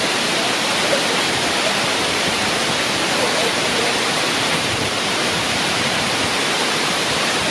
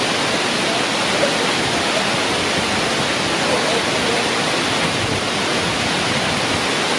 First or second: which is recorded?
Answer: second